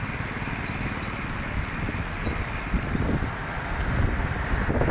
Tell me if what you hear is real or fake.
real